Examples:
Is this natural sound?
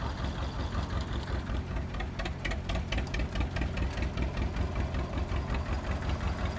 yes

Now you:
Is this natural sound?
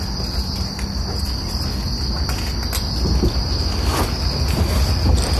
yes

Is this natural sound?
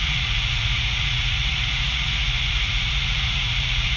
no